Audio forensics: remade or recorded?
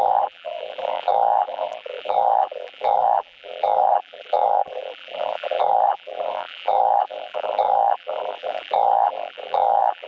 remade